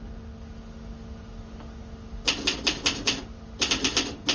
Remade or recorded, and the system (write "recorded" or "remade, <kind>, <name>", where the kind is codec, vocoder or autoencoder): recorded